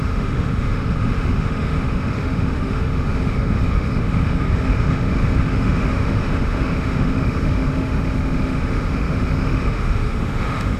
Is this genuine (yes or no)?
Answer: no